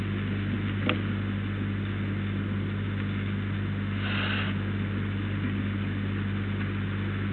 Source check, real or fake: real